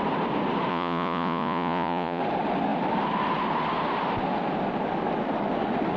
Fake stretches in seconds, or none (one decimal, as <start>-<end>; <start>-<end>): 0.7-2.2

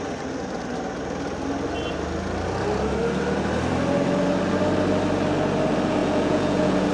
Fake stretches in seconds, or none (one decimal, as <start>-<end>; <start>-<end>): 6.0-6.9

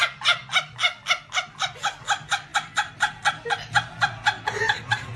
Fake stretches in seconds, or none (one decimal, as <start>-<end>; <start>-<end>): none